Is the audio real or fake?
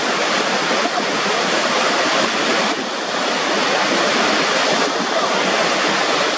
real